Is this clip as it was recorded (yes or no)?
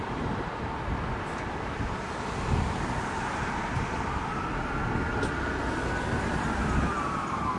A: yes